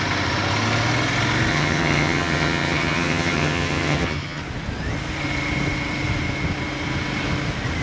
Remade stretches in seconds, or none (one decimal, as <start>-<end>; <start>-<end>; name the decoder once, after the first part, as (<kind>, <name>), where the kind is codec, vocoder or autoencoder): 1.5-4.4 (vocoder, HiFi-GAN)